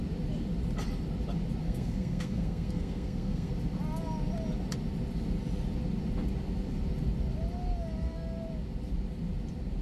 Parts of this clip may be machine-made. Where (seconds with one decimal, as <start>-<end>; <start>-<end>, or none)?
1.6-3.5